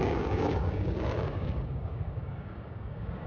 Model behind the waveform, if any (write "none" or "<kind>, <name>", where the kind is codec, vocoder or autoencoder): codec, DAC